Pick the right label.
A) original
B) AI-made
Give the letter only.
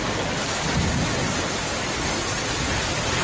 A